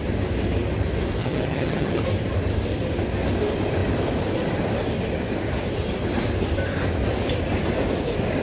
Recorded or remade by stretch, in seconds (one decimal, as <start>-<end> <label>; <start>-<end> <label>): 0.0-1.2 recorded; 1.2-2.0 remade; 2.0-8.4 recorded